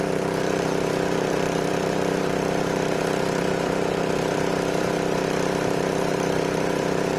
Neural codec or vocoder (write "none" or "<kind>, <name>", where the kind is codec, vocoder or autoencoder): vocoder, BigVGAN v2